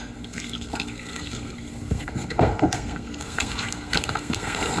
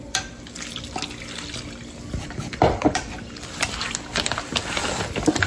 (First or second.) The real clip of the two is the second